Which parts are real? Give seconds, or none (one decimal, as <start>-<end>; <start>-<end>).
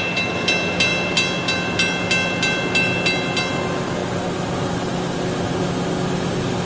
0.0-6.7